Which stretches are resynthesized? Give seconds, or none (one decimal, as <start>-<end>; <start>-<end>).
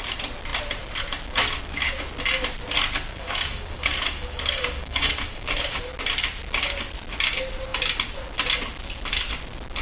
3.1-5.8